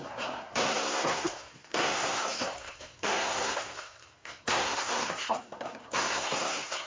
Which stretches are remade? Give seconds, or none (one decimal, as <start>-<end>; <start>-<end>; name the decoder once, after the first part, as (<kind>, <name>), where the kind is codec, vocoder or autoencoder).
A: 0.0-6.9 (codec, SNAC)